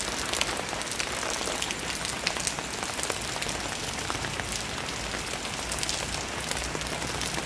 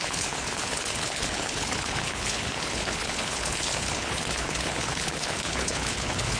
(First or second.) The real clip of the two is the first